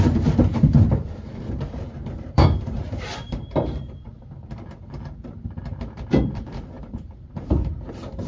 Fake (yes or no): yes